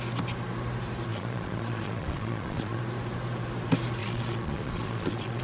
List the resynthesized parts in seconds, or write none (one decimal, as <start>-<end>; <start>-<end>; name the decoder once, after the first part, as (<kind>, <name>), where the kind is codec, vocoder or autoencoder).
1.1-2.8 (vocoder, Vocos); 4.0-5.4